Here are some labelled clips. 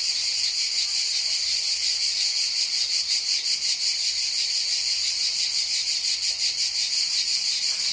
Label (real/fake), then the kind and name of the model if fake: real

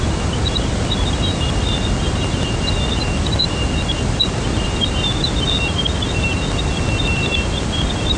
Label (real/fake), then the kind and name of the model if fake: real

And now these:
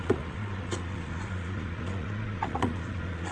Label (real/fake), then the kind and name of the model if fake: fake, vocoder, Vocos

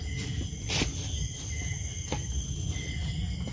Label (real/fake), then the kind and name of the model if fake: real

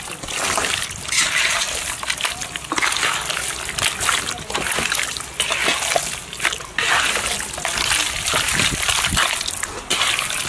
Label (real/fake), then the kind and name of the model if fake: real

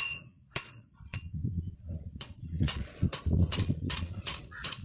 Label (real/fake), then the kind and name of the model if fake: fake, vocoder, Vocos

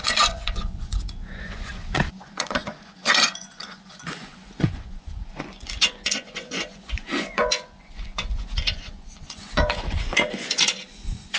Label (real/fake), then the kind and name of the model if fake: fake, vocoder, Vocos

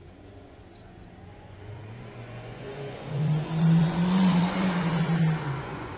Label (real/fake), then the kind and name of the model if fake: fake, vocoder, Vocos